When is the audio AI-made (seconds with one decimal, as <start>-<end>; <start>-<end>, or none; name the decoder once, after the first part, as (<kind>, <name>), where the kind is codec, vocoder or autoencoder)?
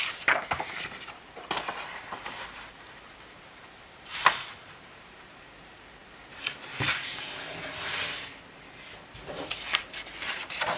0.0-6.0 (vocoder, BigVGAN v2); 9.1-10.8